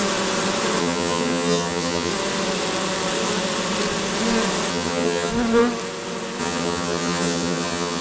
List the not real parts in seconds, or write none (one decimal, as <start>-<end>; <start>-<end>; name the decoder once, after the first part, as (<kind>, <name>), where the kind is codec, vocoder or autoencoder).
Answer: 0.8-2.1 (vocoder, HiFi-GAN); 4.7-5.3; 6.4-8.0